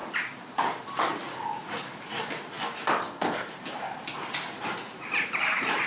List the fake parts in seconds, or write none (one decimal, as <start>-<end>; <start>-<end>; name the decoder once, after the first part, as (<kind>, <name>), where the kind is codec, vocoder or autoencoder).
3.0-3.5 (codec, ZipCodec)